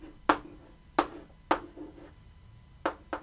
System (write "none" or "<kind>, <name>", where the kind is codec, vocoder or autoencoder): none